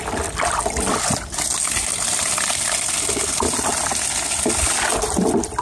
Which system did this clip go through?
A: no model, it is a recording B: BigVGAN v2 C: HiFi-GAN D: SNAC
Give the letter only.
A